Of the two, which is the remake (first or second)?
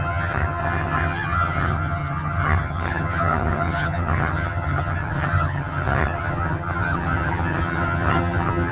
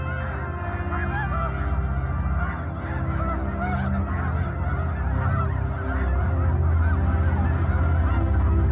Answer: first